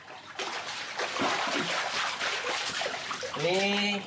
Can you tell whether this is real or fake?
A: real